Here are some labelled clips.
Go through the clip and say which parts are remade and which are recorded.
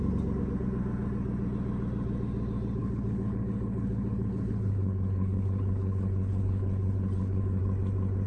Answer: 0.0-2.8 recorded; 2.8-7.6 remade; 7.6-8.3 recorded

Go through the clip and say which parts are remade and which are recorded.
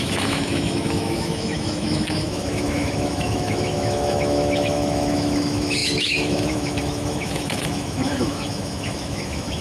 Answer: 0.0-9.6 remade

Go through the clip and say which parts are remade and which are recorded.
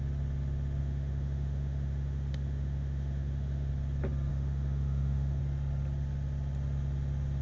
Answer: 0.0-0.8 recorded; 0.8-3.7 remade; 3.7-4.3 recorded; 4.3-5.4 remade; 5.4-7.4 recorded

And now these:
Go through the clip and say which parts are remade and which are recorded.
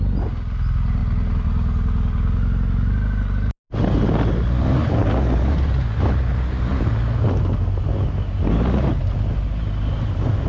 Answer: 0.0-10.5 recorded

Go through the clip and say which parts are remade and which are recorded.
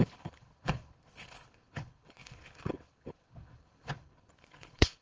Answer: 0.0-5.0 remade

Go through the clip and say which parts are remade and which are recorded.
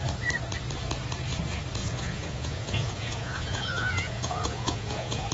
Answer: 0.0-1.8 recorded; 1.8-5.3 remade